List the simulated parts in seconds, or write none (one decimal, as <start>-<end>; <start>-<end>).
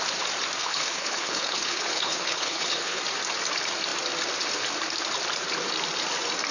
0.6-3.0